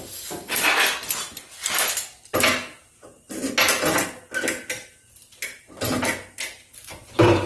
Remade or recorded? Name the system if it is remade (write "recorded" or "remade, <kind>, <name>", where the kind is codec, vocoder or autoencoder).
recorded